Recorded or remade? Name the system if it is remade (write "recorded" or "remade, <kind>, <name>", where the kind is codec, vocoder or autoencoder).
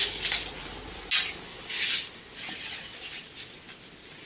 recorded